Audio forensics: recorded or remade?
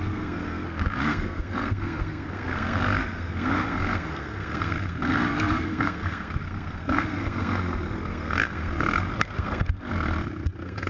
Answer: remade